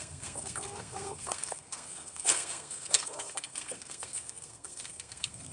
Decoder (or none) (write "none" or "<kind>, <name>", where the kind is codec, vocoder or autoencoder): codec, SNAC